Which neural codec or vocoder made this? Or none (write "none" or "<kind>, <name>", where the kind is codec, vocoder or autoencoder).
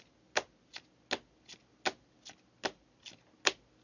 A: none